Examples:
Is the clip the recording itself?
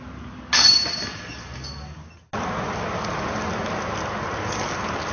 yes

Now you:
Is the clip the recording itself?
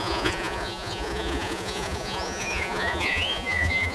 no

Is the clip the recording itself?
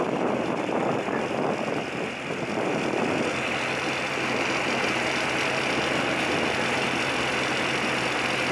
yes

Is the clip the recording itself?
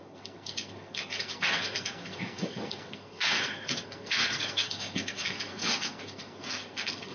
no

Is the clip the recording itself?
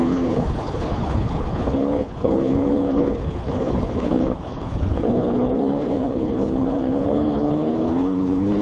no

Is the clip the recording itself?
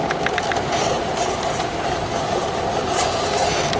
yes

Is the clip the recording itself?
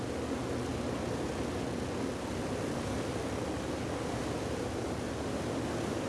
yes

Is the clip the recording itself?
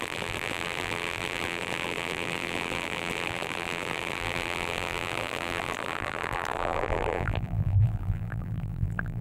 no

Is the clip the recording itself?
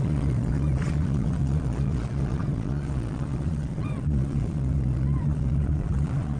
no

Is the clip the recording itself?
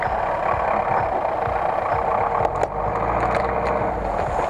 yes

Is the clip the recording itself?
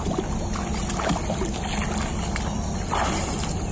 yes